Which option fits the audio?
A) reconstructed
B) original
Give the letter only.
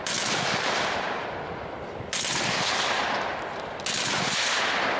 B